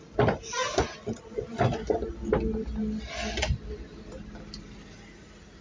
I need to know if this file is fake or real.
real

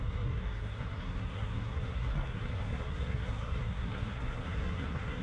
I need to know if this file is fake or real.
fake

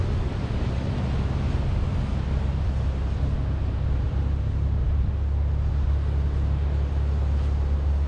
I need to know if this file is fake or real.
real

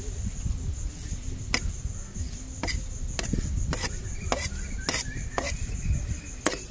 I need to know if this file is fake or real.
real